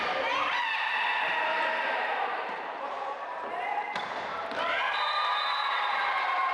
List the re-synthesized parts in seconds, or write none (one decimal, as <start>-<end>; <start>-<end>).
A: 1.3-4.5; 5.6-6.5